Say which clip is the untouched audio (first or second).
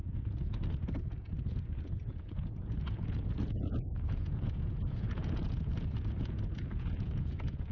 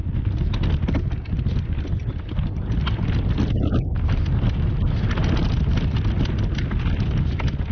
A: second